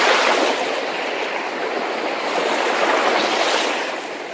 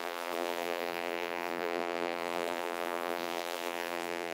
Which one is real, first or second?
first